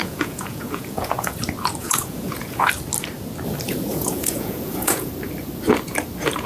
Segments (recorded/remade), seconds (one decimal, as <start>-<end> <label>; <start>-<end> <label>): 0.0-1.4 remade; 1.4-1.8 recorded; 1.8-2.7 remade; 2.7-3.9 recorded; 3.9-5.1 remade; 5.1-6.5 recorded

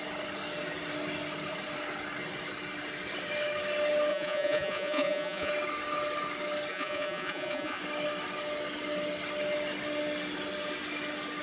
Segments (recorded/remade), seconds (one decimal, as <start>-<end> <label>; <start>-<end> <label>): 0.0-4.1 recorded; 4.1-5.5 remade; 5.5-6.7 recorded; 6.7-7.8 remade; 7.8-11.4 recorded

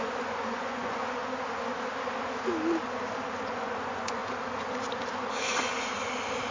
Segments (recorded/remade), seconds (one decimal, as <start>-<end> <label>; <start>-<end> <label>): 0.0-1.2 remade; 1.2-3.5 recorded; 3.5-4.2 remade; 4.2-5.1 recorded; 5.1-5.7 remade; 5.7-6.5 recorded

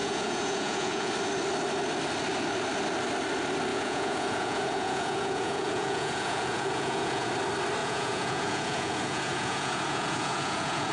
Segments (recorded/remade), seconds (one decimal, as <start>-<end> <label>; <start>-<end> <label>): 0.0-1.1 remade; 1.1-3.7 recorded; 3.7-7.3 remade; 7.3-7.8 recorded; 7.8-10.9 remade

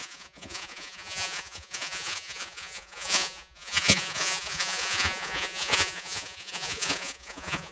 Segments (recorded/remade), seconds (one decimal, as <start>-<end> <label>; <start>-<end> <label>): 0.0-7.7 remade

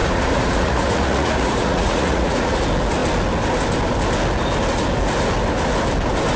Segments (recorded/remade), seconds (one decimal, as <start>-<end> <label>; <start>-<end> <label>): 0.0-2.6 remade; 2.6-6.4 recorded

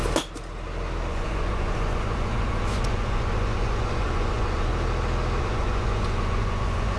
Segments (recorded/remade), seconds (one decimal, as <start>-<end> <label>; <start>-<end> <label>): 0.0-1.1 recorded; 1.1-4.7 remade; 4.7-5.4 recorded; 5.4-7.0 remade